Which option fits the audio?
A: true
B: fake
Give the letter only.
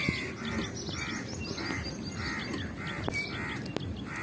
A